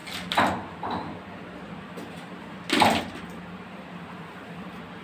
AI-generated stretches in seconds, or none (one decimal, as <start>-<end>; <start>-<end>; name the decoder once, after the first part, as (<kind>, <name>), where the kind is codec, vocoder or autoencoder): none